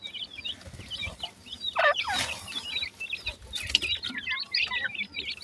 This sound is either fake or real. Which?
real